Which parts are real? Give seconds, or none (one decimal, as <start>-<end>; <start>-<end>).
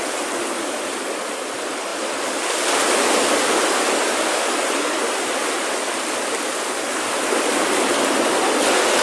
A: 0.0-9.0